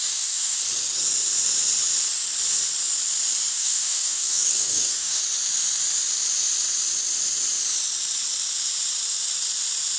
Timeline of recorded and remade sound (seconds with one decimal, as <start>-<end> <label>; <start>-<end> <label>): 0.0-0.6 remade; 0.6-3.5 recorded; 3.5-5.2 remade; 5.2-10.0 recorded